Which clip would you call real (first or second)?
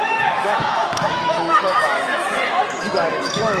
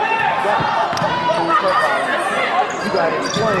second